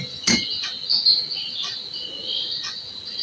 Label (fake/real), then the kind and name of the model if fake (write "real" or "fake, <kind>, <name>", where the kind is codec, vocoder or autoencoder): real